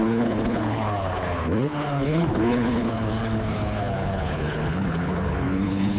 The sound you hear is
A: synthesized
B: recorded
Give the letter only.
A